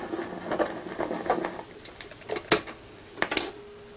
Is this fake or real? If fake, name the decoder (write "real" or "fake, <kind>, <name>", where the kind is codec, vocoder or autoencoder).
real